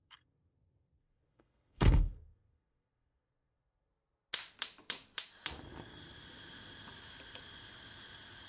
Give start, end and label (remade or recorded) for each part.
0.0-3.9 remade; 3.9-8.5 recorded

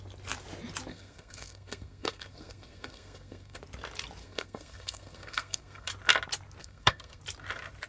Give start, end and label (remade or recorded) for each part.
0.0-0.9 recorded; 0.9-3.6 remade; 3.6-4.2 recorded; 4.2-5.9 remade; 5.9-6.6 recorded; 6.6-7.2 remade; 7.2-7.9 recorded

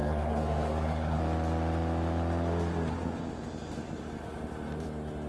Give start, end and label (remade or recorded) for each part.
0.0-1.2 remade; 1.2-5.3 recorded

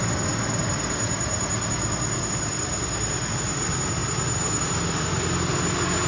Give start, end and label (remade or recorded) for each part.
0.0-6.1 recorded

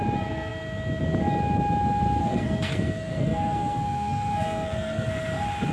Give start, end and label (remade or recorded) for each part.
0.0-2.2 recorded; 2.2-5.1 remade; 5.1-5.7 recorded

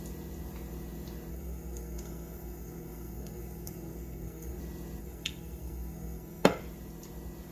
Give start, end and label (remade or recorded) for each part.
0.0-1.3 recorded; 1.3-4.6 remade; 4.6-5.0 recorded; 5.0-6.6 remade; 6.6-7.5 recorded

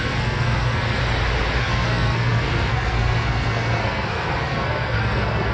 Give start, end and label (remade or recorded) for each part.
0.0-1.0 remade; 1.0-1.6 recorded; 1.6-5.5 remade

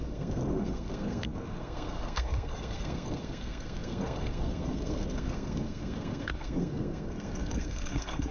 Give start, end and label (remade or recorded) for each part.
0.0-8.3 remade